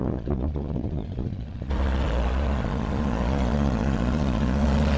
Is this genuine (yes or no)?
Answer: no